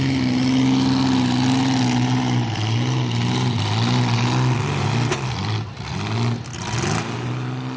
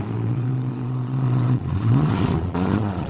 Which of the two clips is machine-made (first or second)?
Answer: second